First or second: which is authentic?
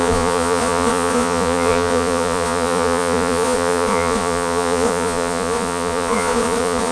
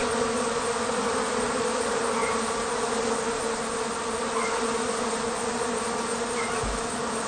second